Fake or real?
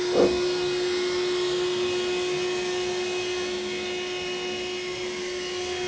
real